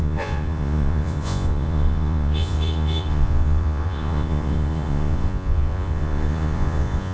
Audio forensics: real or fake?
fake